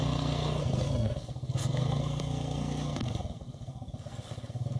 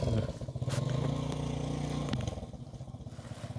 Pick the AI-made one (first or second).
first